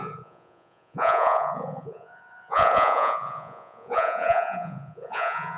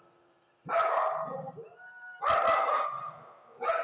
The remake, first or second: first